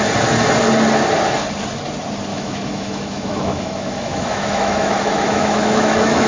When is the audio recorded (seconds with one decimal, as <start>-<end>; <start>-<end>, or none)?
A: 0.0-2.3